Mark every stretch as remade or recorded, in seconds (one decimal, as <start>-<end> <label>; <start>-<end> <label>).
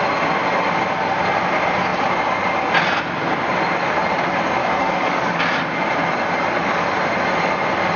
0.0-4.6 recorded; 4.6-5.4 remade; 5.4-8.0 recorded